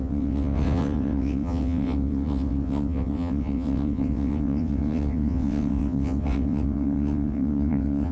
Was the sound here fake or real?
fake